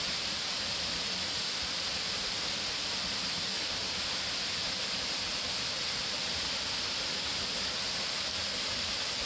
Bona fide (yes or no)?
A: yes